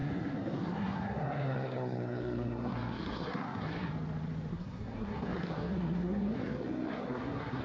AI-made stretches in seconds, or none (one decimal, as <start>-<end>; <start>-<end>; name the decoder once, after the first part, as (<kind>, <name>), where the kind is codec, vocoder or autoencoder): 0.0-3.9 (codec, SNAC); 4.5-7.6